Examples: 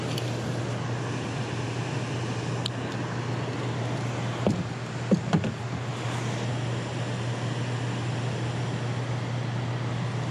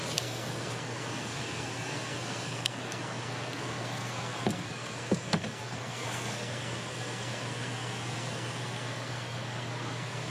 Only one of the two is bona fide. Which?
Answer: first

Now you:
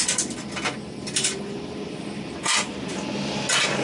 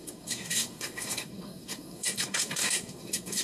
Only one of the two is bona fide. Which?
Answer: first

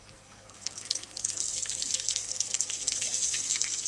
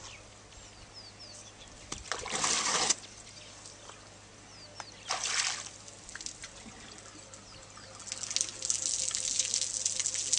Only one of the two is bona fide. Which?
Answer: second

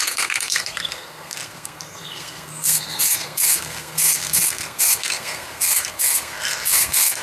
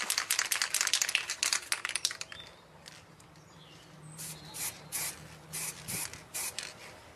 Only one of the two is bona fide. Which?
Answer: second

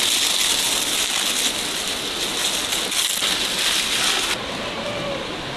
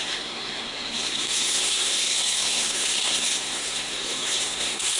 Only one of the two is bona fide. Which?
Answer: first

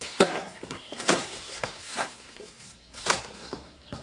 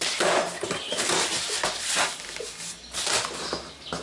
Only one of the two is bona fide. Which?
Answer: second